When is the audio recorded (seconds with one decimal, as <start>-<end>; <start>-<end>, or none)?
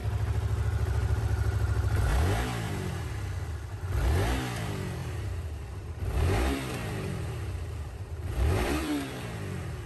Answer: 0.0-5.0; 9.4-9.9